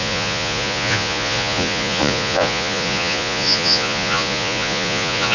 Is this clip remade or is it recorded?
remade